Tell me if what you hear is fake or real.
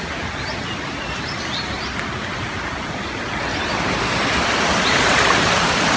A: real